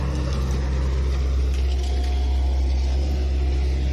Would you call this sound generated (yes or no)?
no